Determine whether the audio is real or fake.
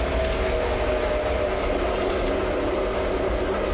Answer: real